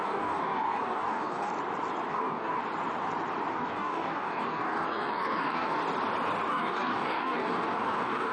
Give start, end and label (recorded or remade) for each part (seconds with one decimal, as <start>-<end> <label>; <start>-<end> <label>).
0.0-1.5 remade; 1.5-2.1 recorded; 2.1-2.6 remade; 2.6-3.5 recorded; 3.5-5.8 remade; 5.8-6.5 recorded; 6.5-8.3 remade